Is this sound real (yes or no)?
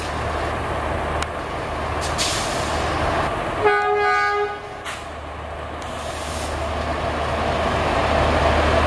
yes